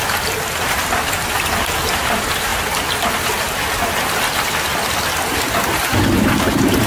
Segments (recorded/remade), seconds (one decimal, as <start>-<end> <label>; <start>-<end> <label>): 0.0-6.9 recorded